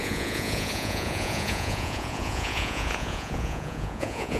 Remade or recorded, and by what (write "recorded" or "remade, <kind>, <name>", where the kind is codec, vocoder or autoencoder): remade, vocoder, Vocos